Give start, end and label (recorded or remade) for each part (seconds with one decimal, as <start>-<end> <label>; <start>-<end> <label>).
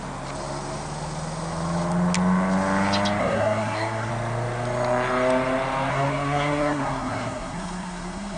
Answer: 0.0-3.2 recorded; 3.2-4.1 remade; 4.1-5.9 recorded; 5.9-8.4 remade